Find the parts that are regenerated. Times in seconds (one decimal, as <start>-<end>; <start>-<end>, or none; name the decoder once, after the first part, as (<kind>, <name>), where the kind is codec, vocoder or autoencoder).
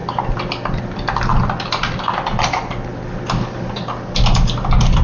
none